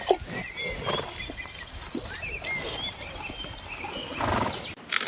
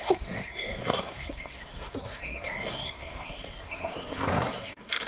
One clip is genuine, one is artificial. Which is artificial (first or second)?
second